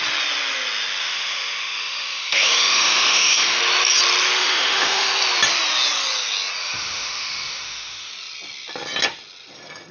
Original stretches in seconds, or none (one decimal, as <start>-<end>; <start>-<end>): 0.0-1.0; 3.6-4.4; 5.1-6.6; 8.1-9.9